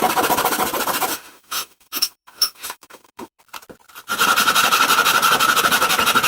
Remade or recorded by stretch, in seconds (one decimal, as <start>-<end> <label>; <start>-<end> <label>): 0.0-1.1 recorded; 1.1-3.4 remade; 3.4-6.3 recorded